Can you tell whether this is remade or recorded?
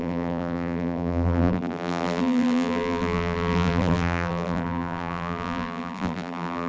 remade